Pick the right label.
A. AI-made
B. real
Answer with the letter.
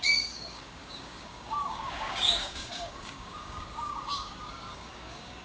A